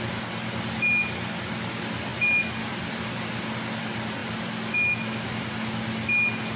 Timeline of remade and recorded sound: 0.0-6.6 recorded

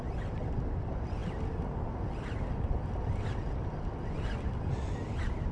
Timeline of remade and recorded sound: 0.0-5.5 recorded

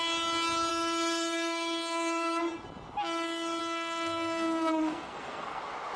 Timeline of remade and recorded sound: 0.0-0.7 recorded; 0.7-2.4 remade; 2.4-3.6 recorded; 3.6-5.6 remade; 5.6-6.0 recorded

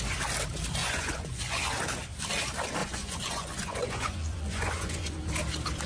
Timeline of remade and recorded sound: 0.0-0.8 recorded; 0.8-1.7 remade; 1.7-2.8 recorded; 2.8-5.2 remade; 5.2-5.9 recorded

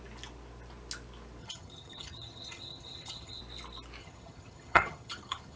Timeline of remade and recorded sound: 0.0-1.4 recorded; 1.4-3.4 remade; 3.4-4.0 recorded; 4.0-5.6 remade

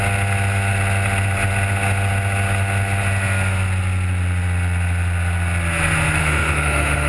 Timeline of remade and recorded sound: 0.0-6.2 recorded; 6.2-7.1 remade